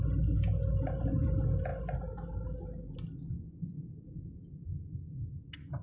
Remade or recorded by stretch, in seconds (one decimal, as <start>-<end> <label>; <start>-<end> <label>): 0.0-5.8 recorded